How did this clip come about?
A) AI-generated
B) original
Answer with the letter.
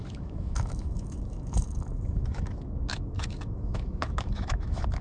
A